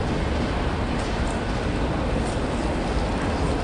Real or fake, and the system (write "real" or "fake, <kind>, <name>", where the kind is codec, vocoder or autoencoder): real